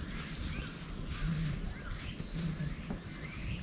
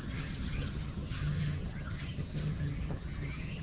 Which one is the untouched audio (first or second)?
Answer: first